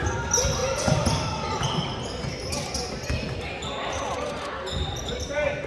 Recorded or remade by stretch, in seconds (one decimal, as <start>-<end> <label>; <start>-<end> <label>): 0.0-5.7 recorded